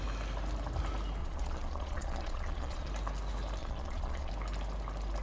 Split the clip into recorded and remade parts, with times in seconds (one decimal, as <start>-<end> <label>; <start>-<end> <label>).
0.0-1.2 recorded; 1.2-2.9 remade; 2.9-3.6 recorded; 3.6-4.3 remade; 4.3-5.2 recorded